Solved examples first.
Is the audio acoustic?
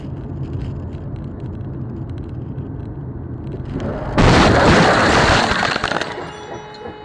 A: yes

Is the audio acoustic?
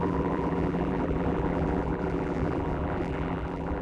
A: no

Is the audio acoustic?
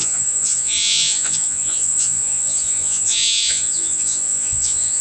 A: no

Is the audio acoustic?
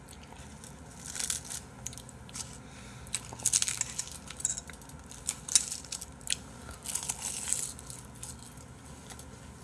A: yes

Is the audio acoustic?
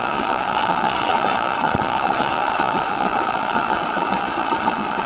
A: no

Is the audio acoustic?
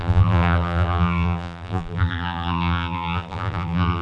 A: no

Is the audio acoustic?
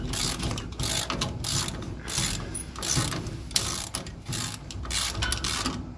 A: yes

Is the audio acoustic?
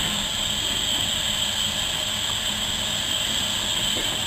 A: yes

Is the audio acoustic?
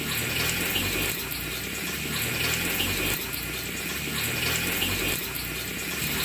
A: yes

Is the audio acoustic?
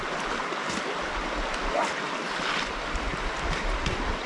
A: yes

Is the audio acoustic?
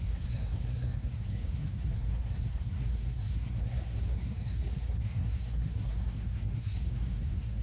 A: no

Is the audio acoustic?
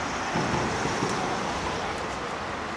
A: yes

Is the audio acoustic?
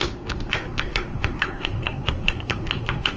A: no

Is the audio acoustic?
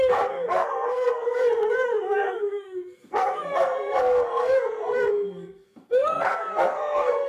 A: no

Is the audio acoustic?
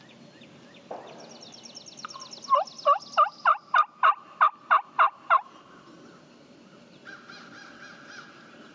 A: yes